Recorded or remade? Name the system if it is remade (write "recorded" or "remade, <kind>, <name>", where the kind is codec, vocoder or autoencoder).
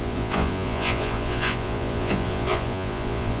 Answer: remade, vocoder, Vocos